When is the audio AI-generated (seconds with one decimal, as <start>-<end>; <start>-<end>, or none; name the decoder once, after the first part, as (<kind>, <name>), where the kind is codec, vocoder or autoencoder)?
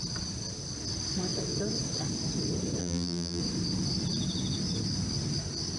2.8-3.4 (vocoder, BigVGAN v2)